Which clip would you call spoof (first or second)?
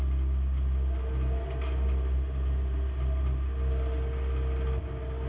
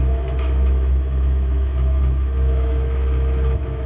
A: second